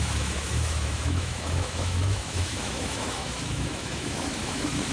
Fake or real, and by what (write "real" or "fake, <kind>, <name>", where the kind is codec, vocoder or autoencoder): fake, autoencoder, DAC-VAE